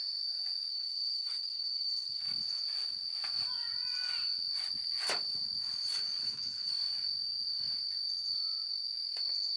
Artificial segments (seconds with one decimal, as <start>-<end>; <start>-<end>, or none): 0.7-2.2; 6.2-6.7

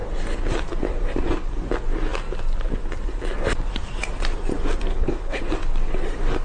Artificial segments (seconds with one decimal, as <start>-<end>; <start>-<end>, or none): 4.9-5.4